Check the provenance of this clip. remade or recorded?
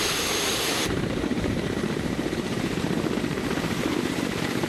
remade